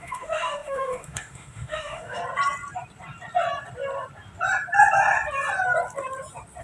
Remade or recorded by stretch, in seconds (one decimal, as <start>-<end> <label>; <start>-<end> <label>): 0.0-2.2 remade; 2.2-6.6 recorded